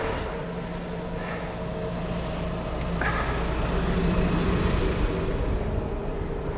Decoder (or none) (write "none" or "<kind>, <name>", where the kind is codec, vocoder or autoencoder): none